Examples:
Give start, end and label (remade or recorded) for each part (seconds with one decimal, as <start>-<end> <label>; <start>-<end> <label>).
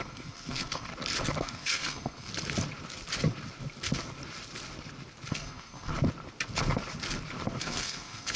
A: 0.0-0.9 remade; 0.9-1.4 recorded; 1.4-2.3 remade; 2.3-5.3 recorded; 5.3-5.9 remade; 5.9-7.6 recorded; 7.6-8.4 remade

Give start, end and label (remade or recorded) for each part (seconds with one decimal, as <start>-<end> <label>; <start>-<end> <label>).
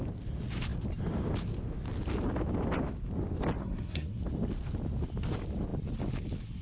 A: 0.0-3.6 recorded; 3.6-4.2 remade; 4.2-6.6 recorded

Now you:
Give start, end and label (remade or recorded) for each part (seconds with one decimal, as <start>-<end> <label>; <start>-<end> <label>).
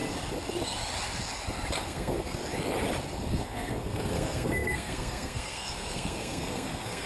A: 0.0-1.8 recorded; 1.8-2.4 remade; 2.4-3.3 recorded; 3.3-7.1 remade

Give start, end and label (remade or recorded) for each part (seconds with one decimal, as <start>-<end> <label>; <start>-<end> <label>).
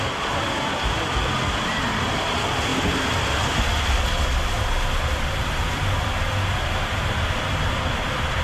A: 0.0-8.4 recorded